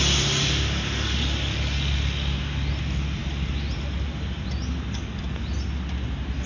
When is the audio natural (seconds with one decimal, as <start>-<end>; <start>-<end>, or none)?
0.0-6.5